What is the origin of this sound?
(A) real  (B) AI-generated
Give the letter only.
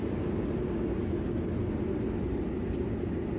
A